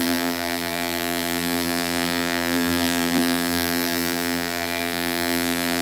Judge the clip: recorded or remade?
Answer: remade